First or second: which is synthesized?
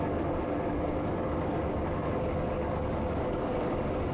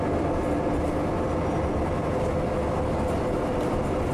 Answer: first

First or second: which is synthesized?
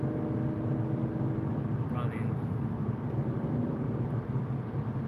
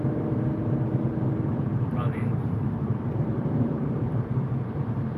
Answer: second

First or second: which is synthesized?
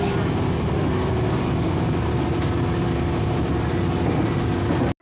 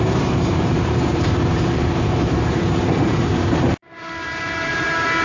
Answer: second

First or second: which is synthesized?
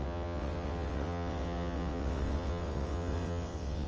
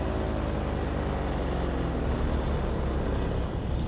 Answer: first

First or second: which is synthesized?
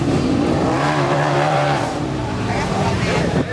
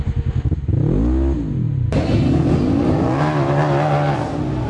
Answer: first